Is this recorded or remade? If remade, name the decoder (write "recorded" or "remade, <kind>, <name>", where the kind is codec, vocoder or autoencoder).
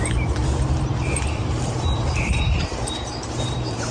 remade, vocoder, BigVGAN v2